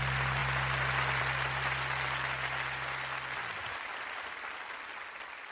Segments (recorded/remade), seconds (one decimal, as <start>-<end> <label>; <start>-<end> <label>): 0.0-5.5 recorded